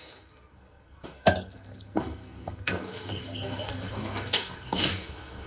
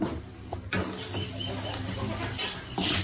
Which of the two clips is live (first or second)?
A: second